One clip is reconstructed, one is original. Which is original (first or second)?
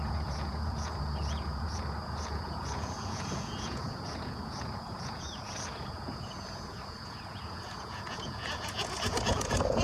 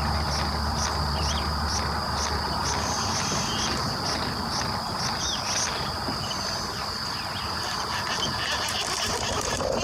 second